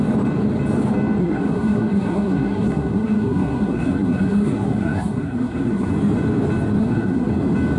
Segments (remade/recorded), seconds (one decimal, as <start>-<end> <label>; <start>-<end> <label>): 0.0-1.2 recorded; 1.2-5.9 remade; 5.9-6.8 recorded; 6.8-7.3 remade; 7.3-7.8 recorded